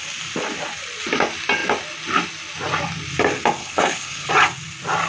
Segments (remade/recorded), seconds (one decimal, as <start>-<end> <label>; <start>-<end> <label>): 0.0-3.6 recorded; 3.6-4.3 remade; 4.3-5.1 recorded